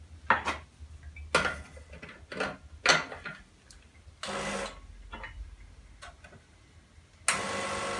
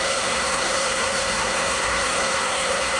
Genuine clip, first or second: first